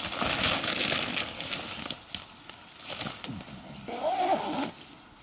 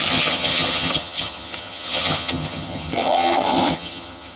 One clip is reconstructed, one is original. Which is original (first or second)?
first